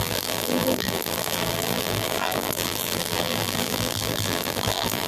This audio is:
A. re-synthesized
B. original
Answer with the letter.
A